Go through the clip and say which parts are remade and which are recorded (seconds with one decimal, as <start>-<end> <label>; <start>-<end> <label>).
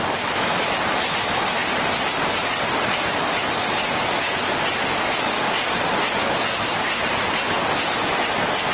0.0-8.7 recorded